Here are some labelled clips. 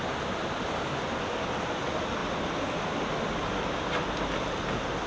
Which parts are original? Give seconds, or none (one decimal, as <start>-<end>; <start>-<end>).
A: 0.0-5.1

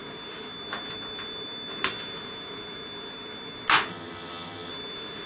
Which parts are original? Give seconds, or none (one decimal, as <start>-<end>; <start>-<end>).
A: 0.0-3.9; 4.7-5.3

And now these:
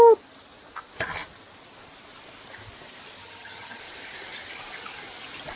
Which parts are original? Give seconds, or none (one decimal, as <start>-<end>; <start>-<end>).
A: 0.0-3.2; 3.8-5.6

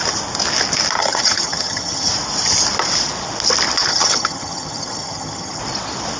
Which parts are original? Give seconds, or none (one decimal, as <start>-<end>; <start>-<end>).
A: 0.0-1.0; 2.1-3.9; 5.6-6.2